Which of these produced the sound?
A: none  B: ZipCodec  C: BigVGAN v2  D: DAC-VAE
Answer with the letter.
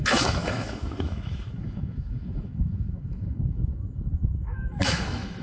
D